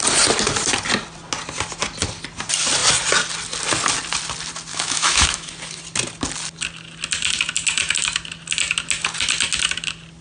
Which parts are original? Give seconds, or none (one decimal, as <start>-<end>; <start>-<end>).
0.0-4.7; 5.5-10.2